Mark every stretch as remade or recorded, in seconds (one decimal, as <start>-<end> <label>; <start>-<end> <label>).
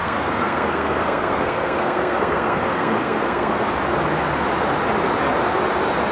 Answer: 0.0-3.7 remade; 3.7-6.1 recorded